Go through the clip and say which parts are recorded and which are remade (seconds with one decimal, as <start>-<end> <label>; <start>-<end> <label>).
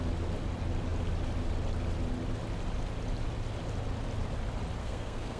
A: 0.0-4.8 recorded; 4.8-5.4 remade